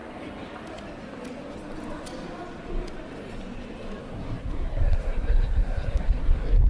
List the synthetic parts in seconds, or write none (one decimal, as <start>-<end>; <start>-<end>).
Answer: 4.0-6.7